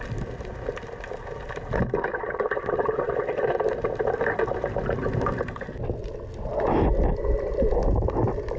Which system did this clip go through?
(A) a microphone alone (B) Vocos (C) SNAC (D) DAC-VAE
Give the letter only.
A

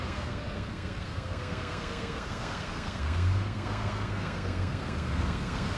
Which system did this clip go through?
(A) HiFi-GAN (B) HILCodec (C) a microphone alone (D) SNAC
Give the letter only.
D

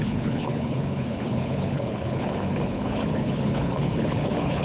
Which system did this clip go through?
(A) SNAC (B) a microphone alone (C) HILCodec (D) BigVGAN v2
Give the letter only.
C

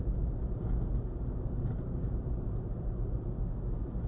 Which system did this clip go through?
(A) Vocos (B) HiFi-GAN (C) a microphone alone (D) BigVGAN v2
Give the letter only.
C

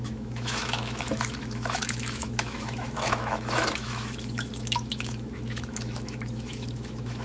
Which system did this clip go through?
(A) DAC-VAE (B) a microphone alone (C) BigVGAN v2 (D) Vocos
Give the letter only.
A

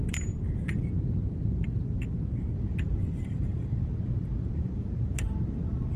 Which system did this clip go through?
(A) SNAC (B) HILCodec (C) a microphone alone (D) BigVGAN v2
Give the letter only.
D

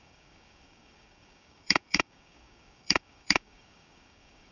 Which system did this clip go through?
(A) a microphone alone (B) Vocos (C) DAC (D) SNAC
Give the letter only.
C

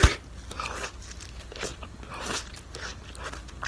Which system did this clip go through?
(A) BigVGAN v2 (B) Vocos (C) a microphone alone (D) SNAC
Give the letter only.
C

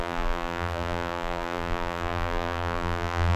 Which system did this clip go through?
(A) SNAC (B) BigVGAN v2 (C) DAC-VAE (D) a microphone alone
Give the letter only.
B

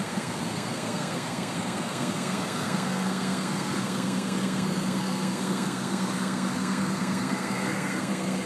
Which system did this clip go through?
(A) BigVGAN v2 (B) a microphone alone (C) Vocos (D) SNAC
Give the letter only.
D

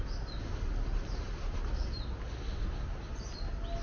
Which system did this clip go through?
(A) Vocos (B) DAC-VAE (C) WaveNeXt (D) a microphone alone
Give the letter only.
D